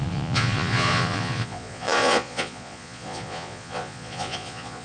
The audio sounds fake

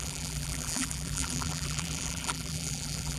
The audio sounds fake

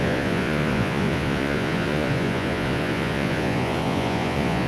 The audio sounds fake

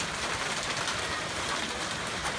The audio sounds real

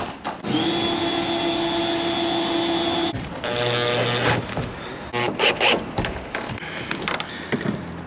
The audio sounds real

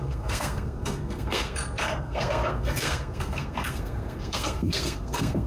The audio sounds fake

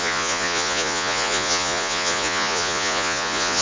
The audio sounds fake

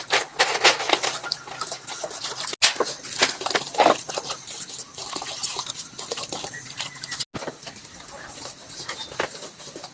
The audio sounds real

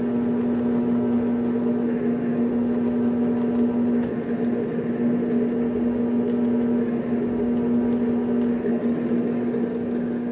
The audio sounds real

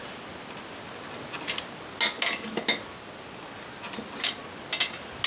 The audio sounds real